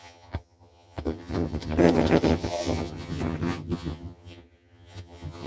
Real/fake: fake